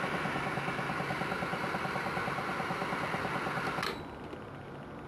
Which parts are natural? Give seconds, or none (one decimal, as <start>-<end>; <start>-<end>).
0.0-5.1